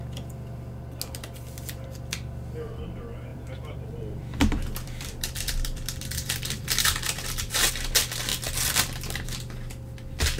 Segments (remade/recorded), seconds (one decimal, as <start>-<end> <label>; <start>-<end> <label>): 0.0-3.3 recorded; 3.3-7.7 remade; 7.7-10.4 recorded